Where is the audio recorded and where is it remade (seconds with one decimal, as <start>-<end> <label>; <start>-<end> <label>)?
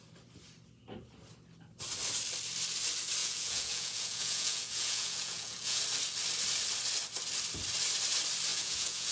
0.0-3.2 recorded; 3.2-5.8 remade; 5.8-8.5 recorded; 8.5-9.1 remade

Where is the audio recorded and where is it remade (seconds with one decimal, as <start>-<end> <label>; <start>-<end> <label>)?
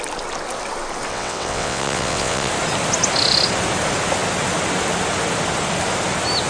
0.0-1.1 recorded; 1.1-2.5 remade; 2.5-6.5 recorded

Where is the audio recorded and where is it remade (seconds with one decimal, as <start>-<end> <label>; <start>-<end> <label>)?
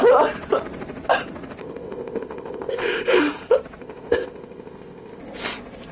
0.0-1.6 recorded; 1.6-3.2 remade; 3.2-3.8 recorded; 3.8-5.2 remade; 5.2-5.9 recorded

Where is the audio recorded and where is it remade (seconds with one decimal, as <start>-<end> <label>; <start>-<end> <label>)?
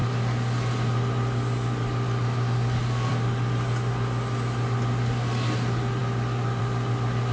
0.0-7.3 recorded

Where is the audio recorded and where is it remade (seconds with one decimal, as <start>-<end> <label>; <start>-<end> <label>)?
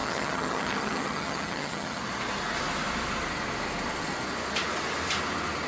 0.0-2.0 remade; 2.0-5.7 recorded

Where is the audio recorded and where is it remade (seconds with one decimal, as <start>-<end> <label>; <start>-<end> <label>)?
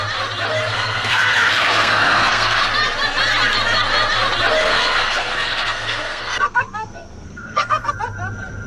0.0-0.7 recorded; 0.7-2.7 remade; 2.7-4.6 recorded; 4.6-7.9 remade; 7.9-8.7 recorded